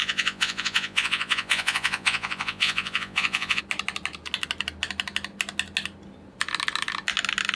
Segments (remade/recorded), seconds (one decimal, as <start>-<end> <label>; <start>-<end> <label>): 0.0-3.6 remade; 3.6-7.6 recorded